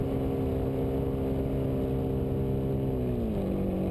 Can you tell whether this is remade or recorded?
recorded